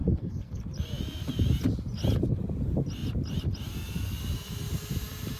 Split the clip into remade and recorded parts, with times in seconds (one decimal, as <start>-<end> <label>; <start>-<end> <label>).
0.0-0.6 remade; 0.6-5.4 recorded